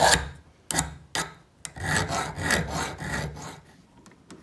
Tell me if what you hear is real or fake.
real